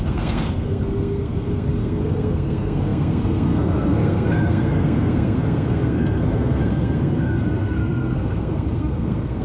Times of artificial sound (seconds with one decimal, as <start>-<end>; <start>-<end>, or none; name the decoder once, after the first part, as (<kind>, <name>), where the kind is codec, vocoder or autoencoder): 0.0-9.4 (codec, SNAC)